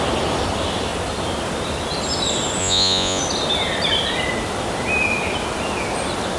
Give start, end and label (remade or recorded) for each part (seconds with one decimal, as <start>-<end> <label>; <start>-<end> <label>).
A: 0.0-2.6 recorded; 2.6-3.2 remade; 3.2-6.4 recorded